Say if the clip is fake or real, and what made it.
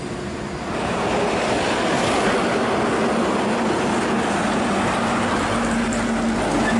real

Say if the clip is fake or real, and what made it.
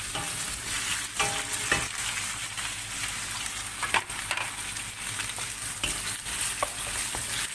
real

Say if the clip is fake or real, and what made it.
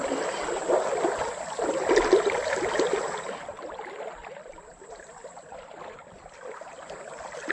real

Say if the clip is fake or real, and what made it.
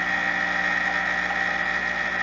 real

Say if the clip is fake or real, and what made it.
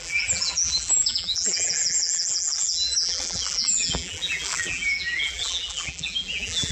fake, vocoder, BigVGAN v2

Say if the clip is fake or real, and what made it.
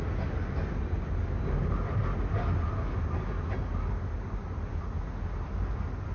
real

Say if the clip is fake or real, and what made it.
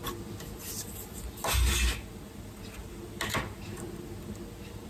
real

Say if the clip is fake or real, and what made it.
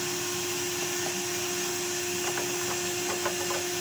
real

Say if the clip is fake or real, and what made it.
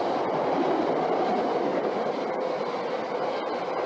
real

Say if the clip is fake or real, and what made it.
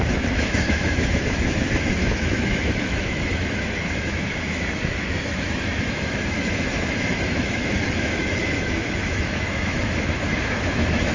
fake, autoencoder, DAC-VAE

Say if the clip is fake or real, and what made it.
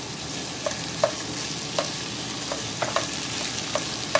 real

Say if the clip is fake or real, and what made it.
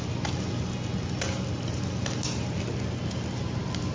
real